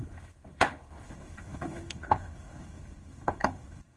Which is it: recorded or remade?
remade